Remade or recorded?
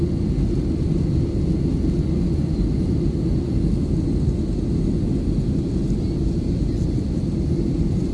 recorded